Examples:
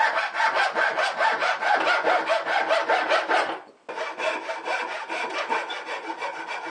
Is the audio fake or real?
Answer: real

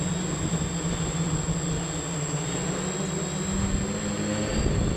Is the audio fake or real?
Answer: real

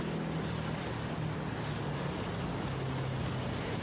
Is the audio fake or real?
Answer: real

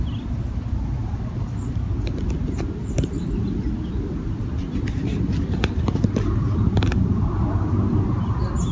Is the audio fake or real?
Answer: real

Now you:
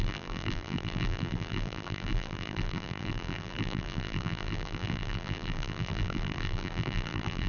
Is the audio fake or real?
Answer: fake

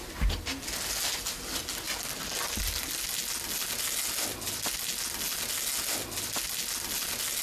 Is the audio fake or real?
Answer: real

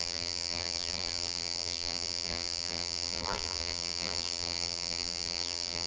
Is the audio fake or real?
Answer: fake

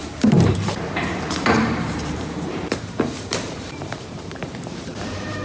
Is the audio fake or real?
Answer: fake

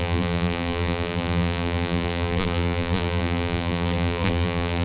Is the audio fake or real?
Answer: fake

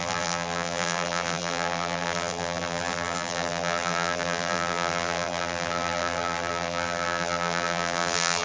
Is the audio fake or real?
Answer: fake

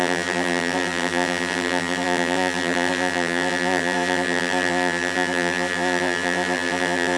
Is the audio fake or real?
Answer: fake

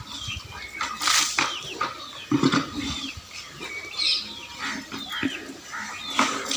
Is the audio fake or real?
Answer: fake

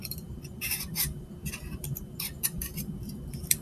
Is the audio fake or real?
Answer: fake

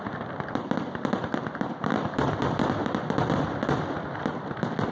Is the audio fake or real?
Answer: fake